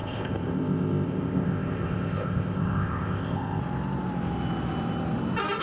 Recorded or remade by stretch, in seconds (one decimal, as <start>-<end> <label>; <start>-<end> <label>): 0.0-3.6 remade; 3.6-5.6 recorded